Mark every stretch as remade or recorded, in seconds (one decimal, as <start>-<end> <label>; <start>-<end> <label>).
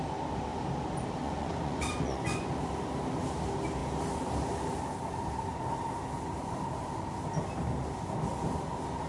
0.0-1.2 recorded; 1.2-2.5 remade; 2.5-9.1 recorded